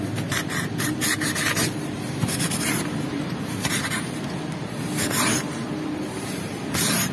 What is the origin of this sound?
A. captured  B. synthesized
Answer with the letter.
B